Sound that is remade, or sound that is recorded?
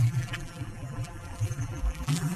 remade